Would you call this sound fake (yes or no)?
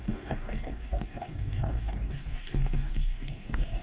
yes